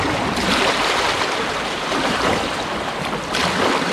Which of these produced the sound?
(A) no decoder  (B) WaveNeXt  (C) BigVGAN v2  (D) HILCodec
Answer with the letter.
C